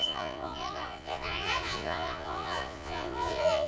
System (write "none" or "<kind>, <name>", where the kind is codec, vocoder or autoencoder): vocoder, Vocos